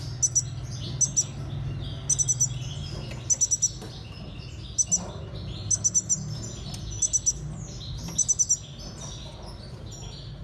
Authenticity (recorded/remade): recorded